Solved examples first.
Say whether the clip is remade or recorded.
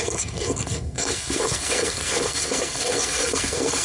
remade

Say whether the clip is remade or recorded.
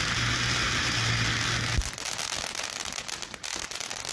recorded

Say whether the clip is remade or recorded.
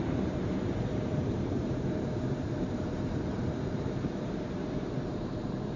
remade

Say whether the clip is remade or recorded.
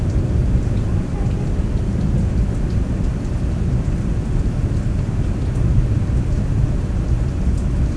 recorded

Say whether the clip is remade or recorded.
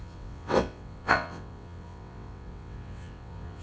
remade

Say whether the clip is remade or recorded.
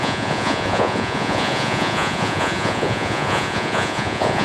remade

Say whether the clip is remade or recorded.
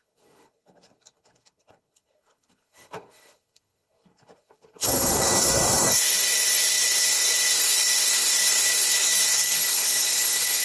remade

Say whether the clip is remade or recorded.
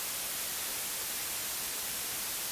remade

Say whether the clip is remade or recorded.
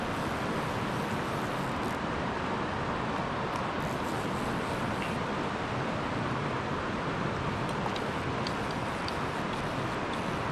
recorded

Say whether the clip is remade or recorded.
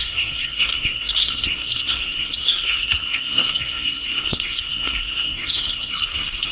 remade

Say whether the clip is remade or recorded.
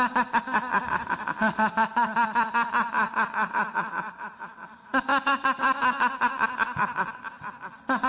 recorded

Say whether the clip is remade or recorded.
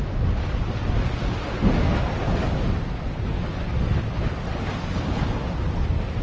recorded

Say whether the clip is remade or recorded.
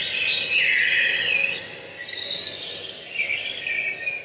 recorded